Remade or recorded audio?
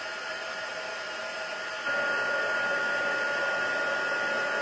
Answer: recorded